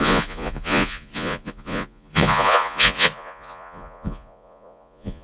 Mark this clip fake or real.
fake